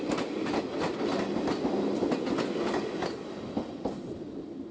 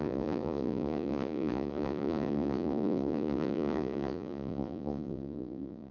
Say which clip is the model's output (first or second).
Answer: second